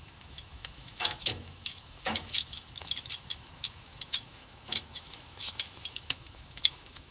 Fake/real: fake